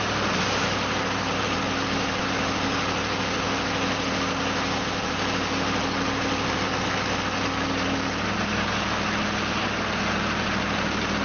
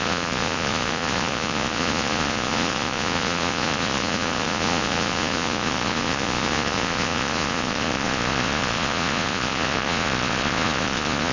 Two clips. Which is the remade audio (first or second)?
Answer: second